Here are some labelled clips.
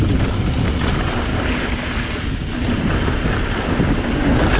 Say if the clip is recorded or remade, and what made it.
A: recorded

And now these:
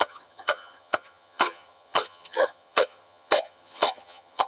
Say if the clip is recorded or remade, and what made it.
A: remade, vocoder, HiFi-GAN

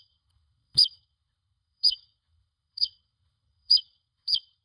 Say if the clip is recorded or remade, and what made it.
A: remade, codec, HILCodec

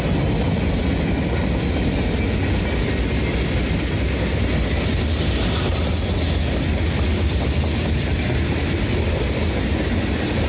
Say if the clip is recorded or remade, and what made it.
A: recorded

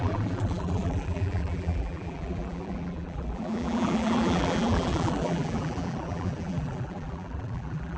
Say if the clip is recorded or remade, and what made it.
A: remade, vocoder, BigVGAN v2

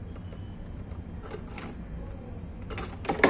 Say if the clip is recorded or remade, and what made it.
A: recorded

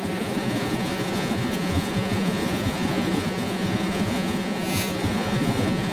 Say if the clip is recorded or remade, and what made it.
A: remade, vocoder, Vocos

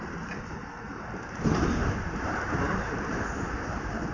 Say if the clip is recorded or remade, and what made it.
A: remade, vocoder, BigVGAN v2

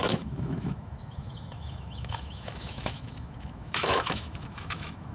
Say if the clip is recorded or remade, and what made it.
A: remade, autoencoder, DAC-VAE